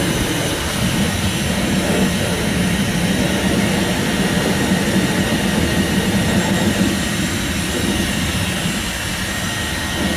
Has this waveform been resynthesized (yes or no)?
no